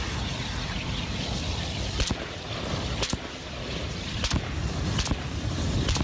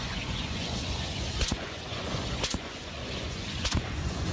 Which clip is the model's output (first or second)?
second